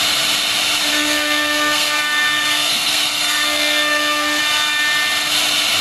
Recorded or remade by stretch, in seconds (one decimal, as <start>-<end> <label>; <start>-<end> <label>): 0.0-0.9 recorded; 0.9-4.4 remade; 4.4-5.8 recorded

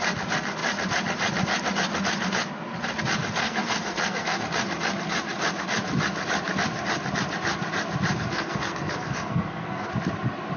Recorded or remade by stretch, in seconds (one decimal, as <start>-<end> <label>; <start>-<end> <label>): 0.0-3.4 recorded; 3.4-4.4 remade; 4.4-8.3 recorded; 8.3-9.9 remade; 9.9-10.6 recorded